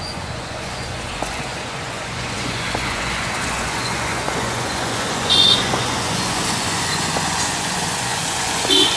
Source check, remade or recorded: remade